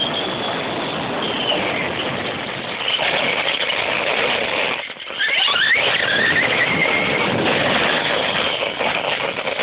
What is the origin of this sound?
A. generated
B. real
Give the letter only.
B